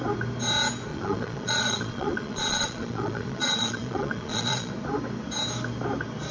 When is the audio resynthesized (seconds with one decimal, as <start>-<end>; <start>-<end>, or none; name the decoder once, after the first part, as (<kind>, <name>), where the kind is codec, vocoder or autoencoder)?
0.9-4.7 (vocoder, Vocos)